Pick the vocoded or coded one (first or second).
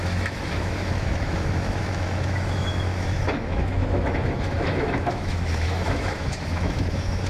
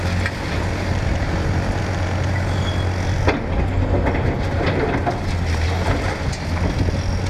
first